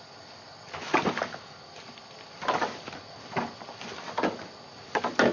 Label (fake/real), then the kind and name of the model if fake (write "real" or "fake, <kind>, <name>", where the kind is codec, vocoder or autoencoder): real